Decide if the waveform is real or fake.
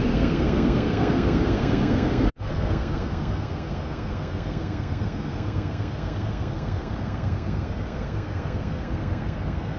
fake